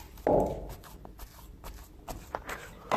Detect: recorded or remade recorded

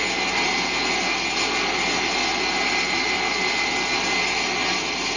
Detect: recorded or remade recorded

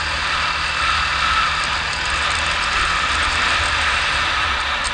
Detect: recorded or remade recorded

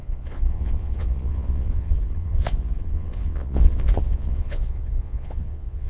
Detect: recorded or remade remade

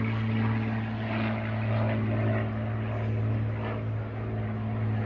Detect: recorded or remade recorded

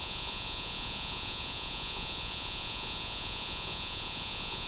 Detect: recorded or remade remade